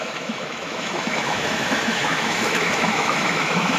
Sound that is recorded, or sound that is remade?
remade